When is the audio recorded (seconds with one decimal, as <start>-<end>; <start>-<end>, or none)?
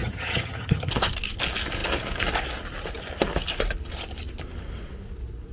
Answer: 0.9-5.5